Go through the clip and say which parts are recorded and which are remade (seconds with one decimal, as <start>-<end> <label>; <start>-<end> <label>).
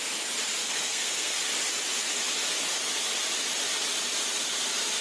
0.0-0.6 recorded; 0.6-1.4 remade; 1.4-5.0 recorded